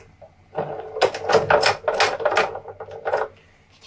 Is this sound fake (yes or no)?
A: no